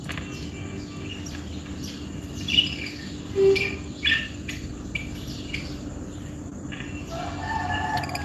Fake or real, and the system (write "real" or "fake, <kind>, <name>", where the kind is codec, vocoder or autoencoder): real